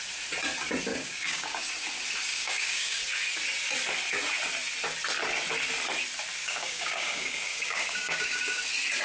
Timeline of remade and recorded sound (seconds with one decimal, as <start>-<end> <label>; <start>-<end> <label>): 0.0-0.9 recorded; 0.9-1.7 remade; 1.7-2.3 recorded; 2.3-3.0 remade; 3.0-6.4 recorded; 6.4-8.6 remade; 8.6-9.0 recorded